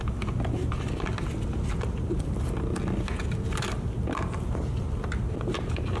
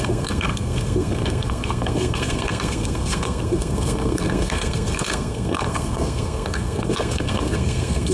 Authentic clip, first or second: first